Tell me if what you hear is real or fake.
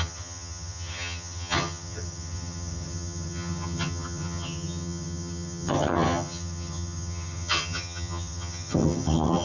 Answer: fake